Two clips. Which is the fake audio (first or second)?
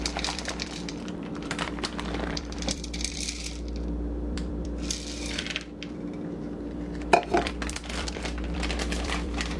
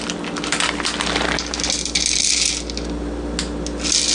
first